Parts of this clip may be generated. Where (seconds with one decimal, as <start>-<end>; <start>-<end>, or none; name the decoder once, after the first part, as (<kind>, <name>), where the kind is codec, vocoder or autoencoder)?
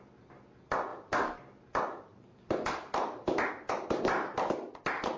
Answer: none